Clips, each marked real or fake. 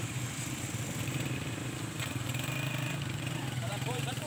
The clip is fake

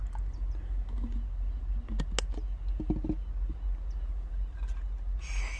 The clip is real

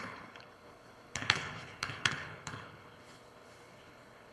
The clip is fake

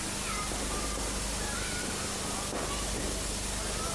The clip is real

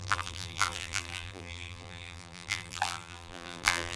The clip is fake